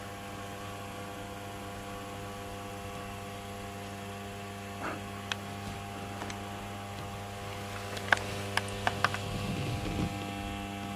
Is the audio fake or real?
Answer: real